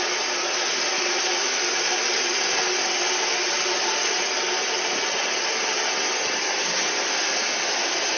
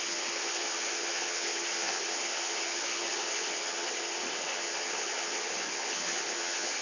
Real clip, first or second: first